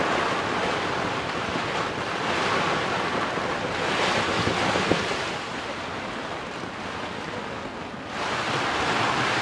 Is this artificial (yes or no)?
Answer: no